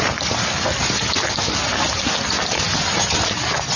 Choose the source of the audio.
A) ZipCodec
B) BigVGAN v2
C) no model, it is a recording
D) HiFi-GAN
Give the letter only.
C